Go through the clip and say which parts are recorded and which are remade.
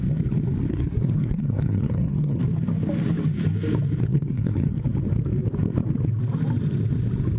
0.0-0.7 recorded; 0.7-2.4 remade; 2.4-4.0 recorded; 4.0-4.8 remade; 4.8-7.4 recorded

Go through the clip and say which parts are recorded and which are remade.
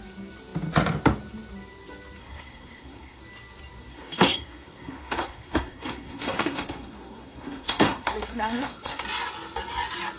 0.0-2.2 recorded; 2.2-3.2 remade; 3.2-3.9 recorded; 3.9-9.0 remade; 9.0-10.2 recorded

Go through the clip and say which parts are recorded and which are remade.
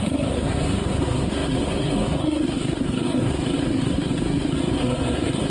0.0-5.5 remade